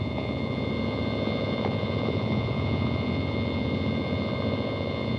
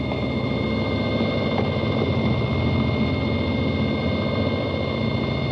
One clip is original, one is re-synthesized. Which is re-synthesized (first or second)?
first